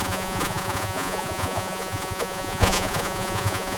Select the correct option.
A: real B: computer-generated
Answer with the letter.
B